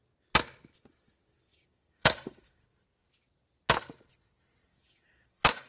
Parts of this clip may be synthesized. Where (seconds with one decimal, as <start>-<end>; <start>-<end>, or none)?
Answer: 1.5-2.6; 4.7-5.7